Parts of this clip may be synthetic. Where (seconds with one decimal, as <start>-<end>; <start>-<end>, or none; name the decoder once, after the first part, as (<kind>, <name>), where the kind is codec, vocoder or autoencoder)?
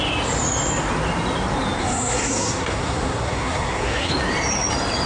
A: 1.8-4.1 (codec, SNAC)